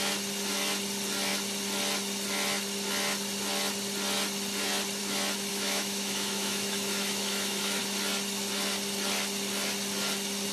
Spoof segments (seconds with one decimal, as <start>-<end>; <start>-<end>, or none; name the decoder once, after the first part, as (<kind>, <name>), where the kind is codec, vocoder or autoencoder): 5.5-7.8 (autoencoder, DAC-VAE)